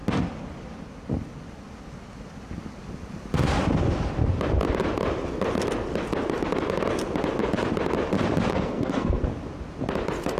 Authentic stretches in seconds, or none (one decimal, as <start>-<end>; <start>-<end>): 0.0-8.5; 9.2-10.4